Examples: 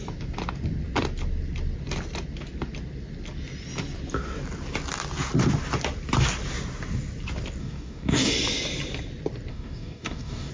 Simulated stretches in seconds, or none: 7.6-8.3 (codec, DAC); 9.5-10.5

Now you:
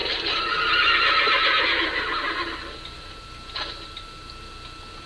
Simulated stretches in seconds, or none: none

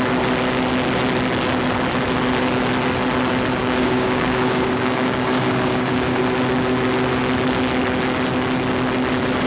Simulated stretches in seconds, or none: 3.6-6.2 (codec, DAC)

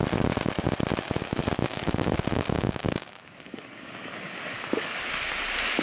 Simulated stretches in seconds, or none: 1.6-5.1 (codec, DAC)

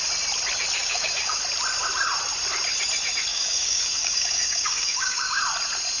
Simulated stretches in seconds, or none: 0.8-1.4 (codec, DAC); 3.3-5.4